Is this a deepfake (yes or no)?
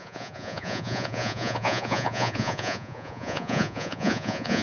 yes